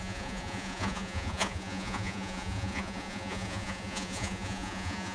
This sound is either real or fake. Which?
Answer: fake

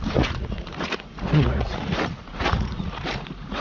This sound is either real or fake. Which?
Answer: fake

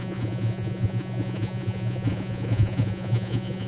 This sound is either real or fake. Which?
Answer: fake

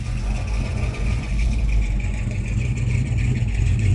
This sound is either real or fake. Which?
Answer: fake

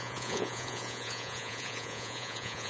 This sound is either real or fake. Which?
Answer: fake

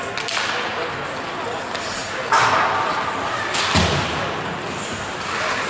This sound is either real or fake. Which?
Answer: real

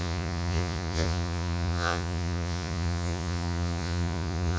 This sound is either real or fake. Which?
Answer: fake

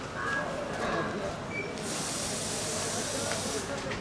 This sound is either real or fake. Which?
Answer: real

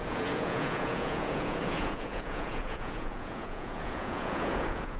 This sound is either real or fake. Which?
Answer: fake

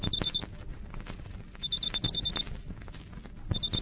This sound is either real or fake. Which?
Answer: real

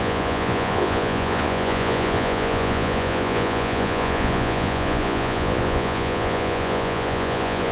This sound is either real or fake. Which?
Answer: fake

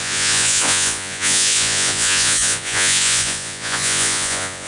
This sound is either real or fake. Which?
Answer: fake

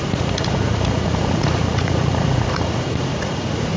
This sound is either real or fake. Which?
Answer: fake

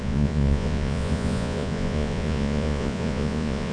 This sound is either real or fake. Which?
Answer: fake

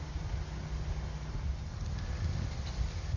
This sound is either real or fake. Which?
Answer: real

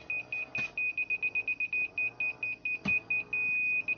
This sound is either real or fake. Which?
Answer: real